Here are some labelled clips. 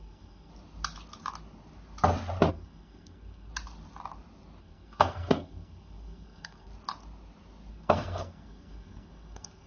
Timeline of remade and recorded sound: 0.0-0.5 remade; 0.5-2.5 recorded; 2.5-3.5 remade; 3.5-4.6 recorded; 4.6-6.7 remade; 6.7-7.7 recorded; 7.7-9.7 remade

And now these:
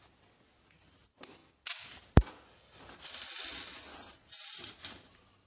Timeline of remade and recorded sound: 0.0-5.5 recorded

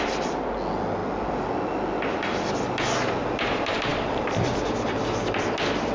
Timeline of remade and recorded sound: 0.0-5.9 recorded

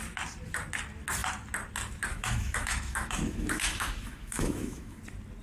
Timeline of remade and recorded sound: 0.0-2.1 recorded; 2.1-5.0 remade; 5.0-5.4 recorded